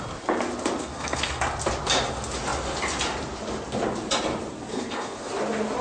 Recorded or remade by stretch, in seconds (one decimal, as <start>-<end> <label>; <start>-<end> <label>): 0.0-0.8 recorded; 0.8-1.4 remade; 1.4-4.7 recorded; 4.7-5.3 remade; 5.3-5.8 recorded

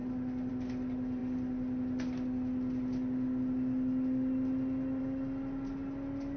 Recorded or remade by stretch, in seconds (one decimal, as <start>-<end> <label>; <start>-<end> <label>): 0.0-6.4 recorded